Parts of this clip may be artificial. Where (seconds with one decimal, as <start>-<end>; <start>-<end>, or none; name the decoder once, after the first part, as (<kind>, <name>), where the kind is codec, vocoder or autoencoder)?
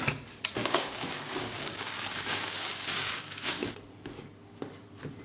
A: 0.6-3.7 (codec, DAC)